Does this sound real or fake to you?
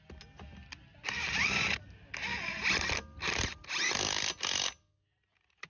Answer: real